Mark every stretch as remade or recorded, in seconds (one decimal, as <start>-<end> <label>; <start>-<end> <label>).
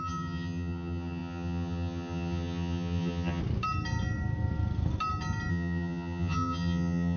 0.0-3.4 remade; 3.4-5.5 recorded; 5.5-7.2 remade